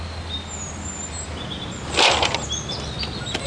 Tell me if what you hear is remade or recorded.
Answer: recorded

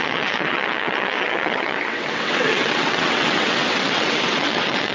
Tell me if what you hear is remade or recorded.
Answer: remade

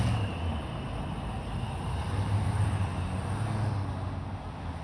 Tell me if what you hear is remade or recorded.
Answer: recorded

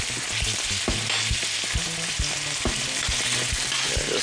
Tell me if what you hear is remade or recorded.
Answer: recorded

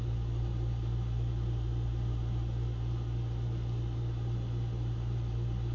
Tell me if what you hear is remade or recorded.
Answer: recorded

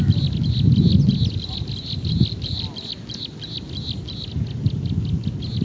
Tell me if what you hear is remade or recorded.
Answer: recorded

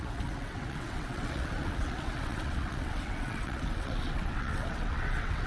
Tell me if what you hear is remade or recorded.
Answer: remade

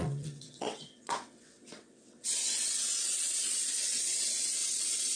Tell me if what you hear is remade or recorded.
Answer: remade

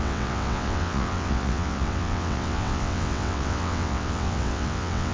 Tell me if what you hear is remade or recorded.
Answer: remade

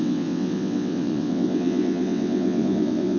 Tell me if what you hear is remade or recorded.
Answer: remade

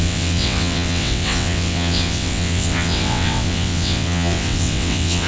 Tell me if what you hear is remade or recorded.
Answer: remade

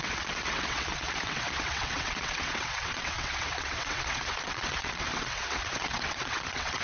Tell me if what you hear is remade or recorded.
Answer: remade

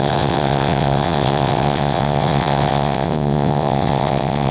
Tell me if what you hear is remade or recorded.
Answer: remade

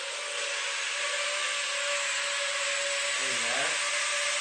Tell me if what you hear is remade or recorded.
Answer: recorded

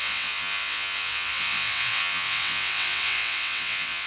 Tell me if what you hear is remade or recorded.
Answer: remade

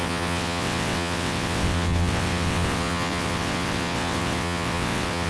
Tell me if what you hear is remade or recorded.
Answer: remade